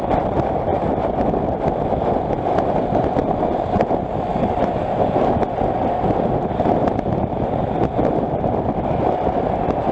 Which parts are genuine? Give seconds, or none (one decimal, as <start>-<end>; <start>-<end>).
0.0-9.9